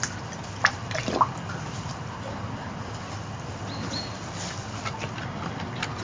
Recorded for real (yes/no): yes